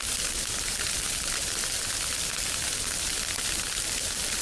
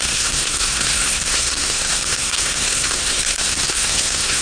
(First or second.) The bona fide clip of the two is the first